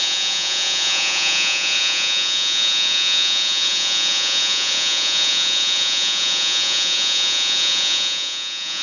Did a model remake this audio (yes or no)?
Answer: yes